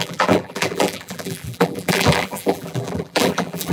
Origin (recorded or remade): remade